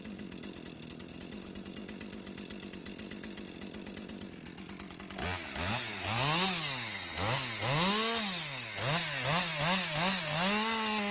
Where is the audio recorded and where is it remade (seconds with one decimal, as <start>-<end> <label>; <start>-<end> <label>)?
0.0-11.1 recorded